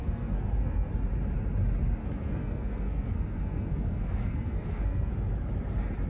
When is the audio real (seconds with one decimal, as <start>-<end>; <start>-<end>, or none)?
0.9-2.0; 5.1-6.1